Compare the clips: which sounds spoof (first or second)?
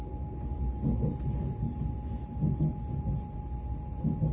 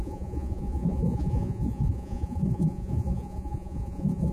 second